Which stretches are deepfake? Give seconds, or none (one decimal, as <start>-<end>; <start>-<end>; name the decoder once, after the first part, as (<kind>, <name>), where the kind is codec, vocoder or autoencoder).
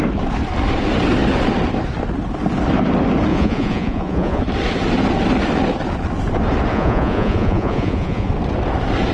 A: 3.3-4.4 (vocoder, Vocos); 6.7-8.3